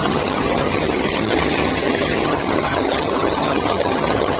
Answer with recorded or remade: remade